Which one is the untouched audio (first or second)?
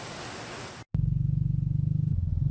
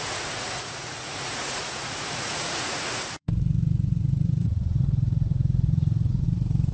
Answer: first